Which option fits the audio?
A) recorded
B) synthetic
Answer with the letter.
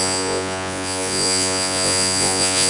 B